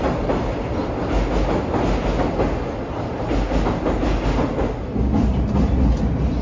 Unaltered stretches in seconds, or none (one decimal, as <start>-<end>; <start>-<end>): 0.0-6.4